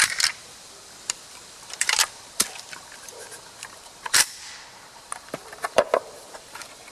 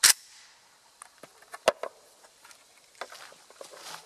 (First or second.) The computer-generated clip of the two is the first